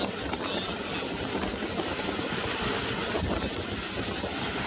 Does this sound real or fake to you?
real